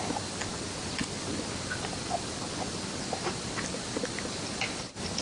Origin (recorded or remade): recorded